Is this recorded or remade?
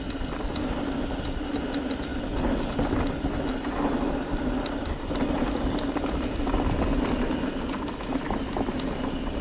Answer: recorded